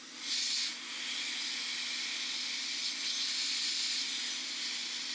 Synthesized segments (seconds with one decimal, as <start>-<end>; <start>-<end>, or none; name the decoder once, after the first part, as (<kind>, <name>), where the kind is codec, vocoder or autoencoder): none